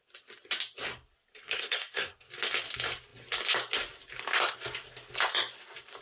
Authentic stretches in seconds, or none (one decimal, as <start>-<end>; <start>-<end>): 0.0-1.3; 2.3-6.0